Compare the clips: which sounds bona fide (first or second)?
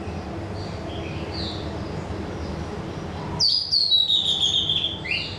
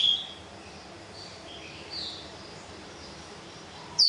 first